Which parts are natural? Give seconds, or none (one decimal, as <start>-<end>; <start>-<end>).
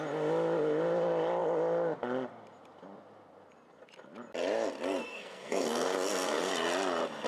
0.0-5.0; 6.5-7.3